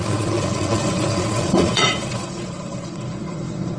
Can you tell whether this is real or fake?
fake